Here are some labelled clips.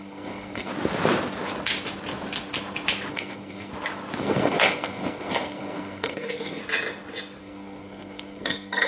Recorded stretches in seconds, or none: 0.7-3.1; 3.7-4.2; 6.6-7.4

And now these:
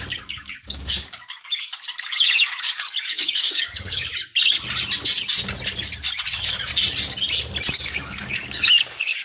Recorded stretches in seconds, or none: 4.1-6.3; 6.7-7.7